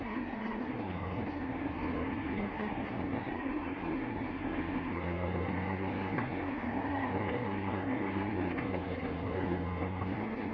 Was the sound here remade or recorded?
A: remade